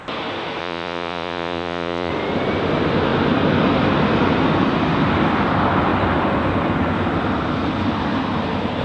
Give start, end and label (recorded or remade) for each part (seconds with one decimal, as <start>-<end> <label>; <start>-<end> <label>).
0.0-0.6 recorded; 0.6-2.1 remade; 2.1-8.8 recorded

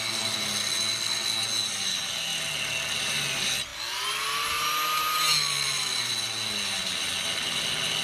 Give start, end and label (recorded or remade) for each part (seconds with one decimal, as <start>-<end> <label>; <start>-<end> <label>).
0.0-8.0 recorded

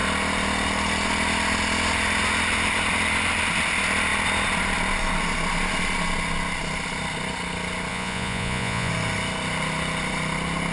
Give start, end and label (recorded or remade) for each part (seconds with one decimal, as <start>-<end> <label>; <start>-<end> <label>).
0.0-7.9 recorded; 7.9-8.9 remade; 8.9-10.7 recorded

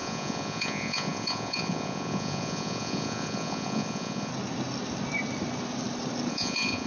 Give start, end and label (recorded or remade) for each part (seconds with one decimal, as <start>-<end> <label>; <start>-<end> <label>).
0.0-4.3 remade; 4.3-6.3 recorded; 6.3-6.9 remade

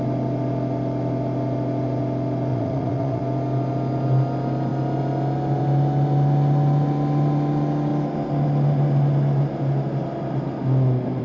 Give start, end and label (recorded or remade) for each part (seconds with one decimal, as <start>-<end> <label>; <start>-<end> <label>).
0.0-2.5 recorded; 2.5-3.2 remade; 3.2-11.2 recorded

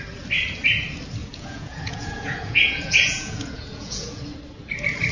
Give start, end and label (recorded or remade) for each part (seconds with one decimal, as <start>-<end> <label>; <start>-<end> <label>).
0.0-1.2 recorded; 1.2-4.2 remade; 4.2-5.1 recorded